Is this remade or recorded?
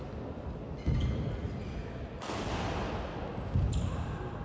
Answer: recorded